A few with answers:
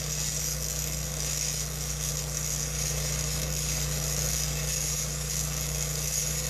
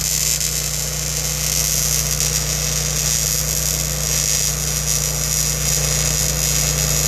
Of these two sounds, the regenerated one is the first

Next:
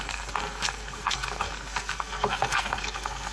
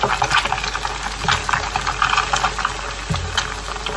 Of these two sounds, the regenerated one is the first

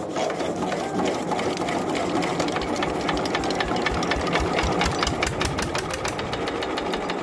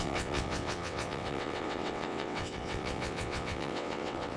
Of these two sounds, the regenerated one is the second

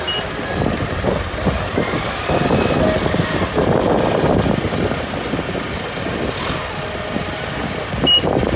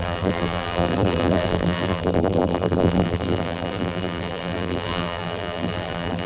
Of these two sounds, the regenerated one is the second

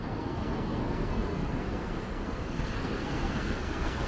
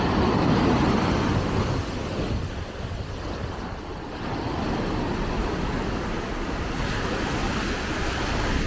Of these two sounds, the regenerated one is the first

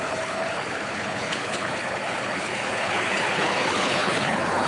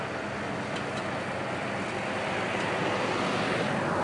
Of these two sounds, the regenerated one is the first